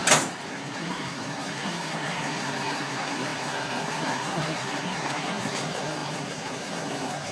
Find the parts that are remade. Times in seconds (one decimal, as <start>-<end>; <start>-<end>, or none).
0.5-7.3